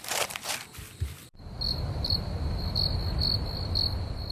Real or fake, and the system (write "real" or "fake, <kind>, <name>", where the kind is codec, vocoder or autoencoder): real